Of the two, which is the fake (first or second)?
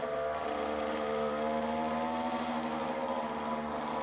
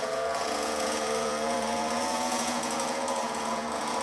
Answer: second